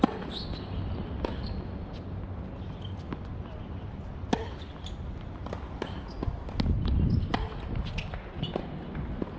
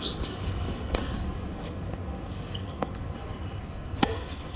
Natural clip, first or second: first